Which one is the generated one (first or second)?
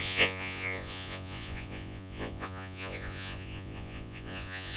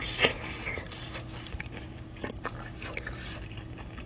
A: first